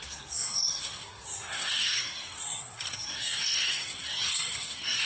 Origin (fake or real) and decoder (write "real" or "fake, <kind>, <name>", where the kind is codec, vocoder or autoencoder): fake, codec, SNAC